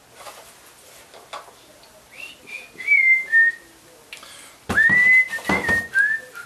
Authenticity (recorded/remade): recorded